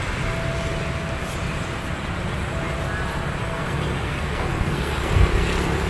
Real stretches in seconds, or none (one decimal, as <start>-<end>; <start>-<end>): 0.0-3.4